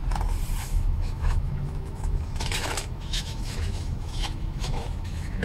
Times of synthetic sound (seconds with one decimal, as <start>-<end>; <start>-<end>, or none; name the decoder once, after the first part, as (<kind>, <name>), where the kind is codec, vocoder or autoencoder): 0.6-5.4 (autoencoder, DAC-VAE)